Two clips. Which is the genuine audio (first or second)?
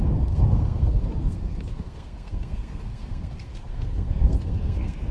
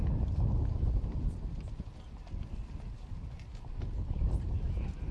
second